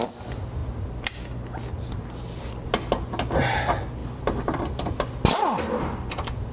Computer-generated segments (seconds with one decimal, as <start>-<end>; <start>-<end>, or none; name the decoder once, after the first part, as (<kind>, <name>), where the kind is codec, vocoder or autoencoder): 4.0-4.6 (vocoder, BigVGAN v2)